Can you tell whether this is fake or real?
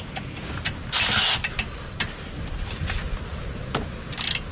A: real